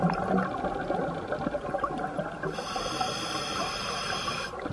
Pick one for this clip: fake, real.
real